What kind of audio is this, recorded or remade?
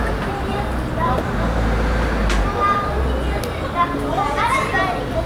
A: recorded